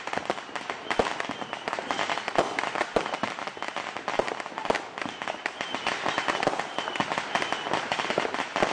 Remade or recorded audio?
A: recorded